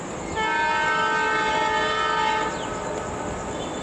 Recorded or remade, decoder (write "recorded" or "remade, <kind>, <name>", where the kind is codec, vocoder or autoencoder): recorded